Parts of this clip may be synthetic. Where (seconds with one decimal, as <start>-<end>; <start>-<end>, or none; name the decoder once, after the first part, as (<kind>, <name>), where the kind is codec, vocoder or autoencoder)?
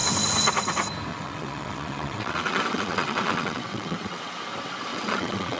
1.1-4.3 (vocoder, WaveNeXt); 4.9-5.6